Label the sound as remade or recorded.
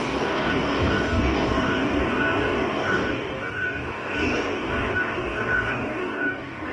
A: remade